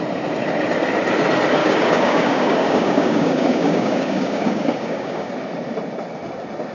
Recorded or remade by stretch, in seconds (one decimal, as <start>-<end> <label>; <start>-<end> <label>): 0.0-1.6 recorded; 1.6-5.3 remade; 5.3-6.7 recorded